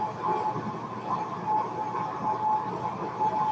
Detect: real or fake real